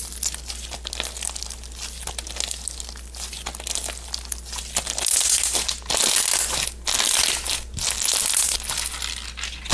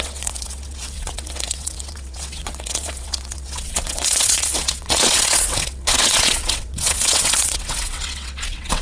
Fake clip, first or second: second